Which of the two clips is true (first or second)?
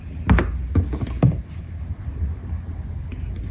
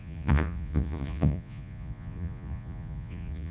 first